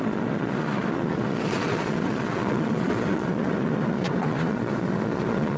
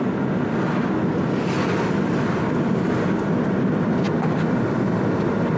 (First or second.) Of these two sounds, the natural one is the second